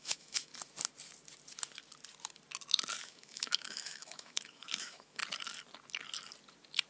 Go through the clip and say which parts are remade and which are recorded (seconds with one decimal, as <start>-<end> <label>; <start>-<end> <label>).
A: 0.0-0.5 remade; 0.5-3.0 recorded; 3.0-5.2 remade; 5.2-6.9 recorded